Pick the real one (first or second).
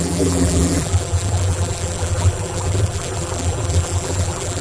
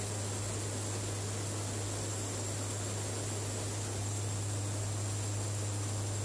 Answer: second